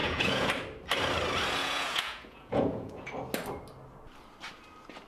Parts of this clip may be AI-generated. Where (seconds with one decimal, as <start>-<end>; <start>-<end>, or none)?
0.0-0.5; 1.6-3.1